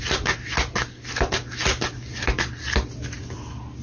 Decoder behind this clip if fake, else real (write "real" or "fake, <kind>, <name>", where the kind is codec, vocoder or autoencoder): real